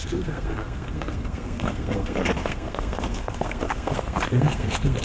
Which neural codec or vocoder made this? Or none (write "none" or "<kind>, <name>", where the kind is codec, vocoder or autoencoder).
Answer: codec, SNAC